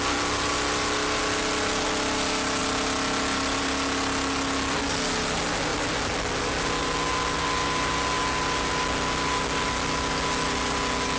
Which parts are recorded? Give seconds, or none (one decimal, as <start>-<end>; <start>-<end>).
0.0-11.2